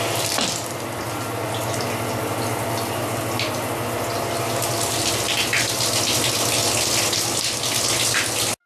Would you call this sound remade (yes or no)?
no